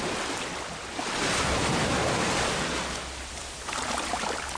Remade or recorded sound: recorded